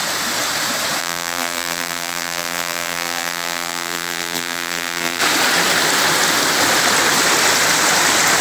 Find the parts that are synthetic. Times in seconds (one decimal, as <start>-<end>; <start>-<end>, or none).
1.0-5.2